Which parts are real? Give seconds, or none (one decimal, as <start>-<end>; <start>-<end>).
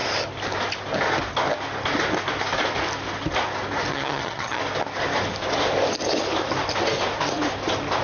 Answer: 0.0-3.9; 4.6-8.0